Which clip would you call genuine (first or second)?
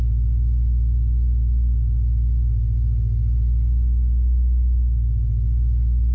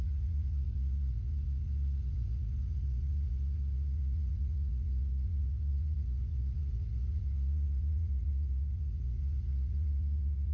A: first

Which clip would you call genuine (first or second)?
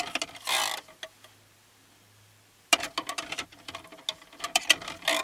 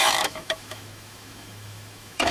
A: first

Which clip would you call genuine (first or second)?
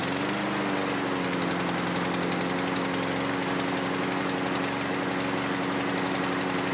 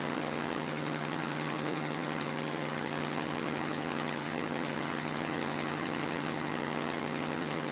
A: first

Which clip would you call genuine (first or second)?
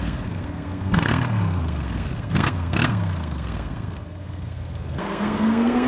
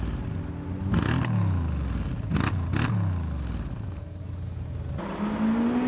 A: second